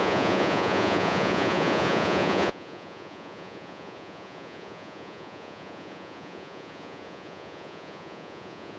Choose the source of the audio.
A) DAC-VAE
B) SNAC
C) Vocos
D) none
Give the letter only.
C